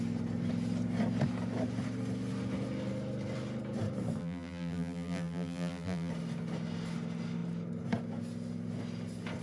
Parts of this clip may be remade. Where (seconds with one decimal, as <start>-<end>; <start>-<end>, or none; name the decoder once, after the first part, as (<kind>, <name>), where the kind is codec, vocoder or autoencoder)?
4.2-6.1 (vocoder, BigVGAN v2)